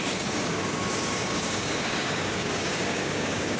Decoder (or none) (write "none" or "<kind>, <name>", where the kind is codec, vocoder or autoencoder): codec, DAC